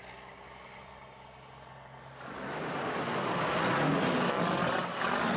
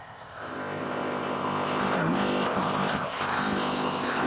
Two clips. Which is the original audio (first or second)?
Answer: first